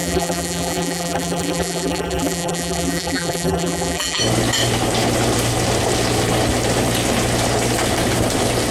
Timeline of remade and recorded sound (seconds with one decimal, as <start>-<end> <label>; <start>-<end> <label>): 0.0-4.2 remade; 4.2-8.7 recorded